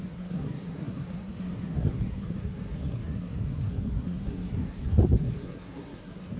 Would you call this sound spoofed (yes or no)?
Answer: yes